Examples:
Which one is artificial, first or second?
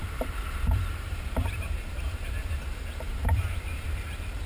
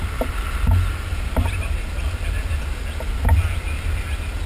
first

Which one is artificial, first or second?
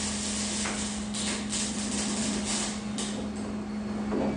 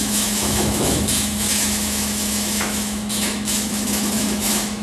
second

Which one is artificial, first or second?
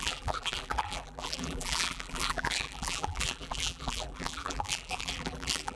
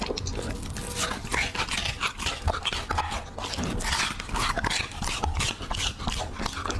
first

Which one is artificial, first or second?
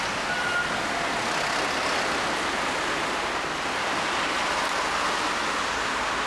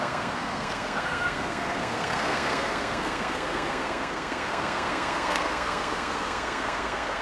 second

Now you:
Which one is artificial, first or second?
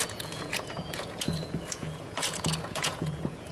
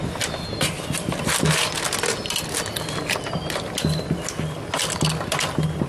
first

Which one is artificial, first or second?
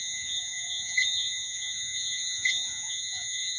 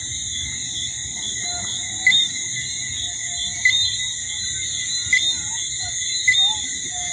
first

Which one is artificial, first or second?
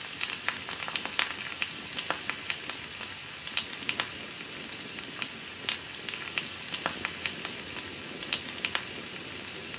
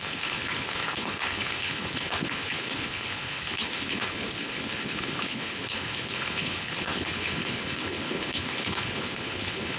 second